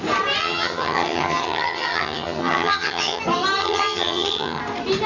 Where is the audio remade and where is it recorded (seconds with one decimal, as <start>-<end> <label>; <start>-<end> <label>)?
0.0-0.4 recorded; 0.4-3.2 remade; 3.2-3.6 recorded; 3.6-4.6 remade; 4.6-5.1 recorded